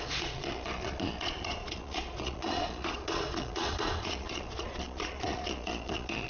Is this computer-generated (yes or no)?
yes